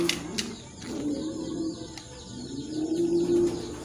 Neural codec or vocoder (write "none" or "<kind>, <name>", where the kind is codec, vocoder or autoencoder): none